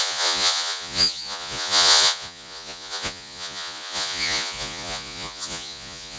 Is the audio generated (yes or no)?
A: yes